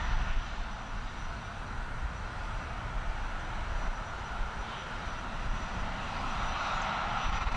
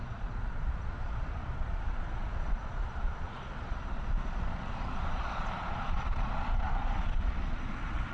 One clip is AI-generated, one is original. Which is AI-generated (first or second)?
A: second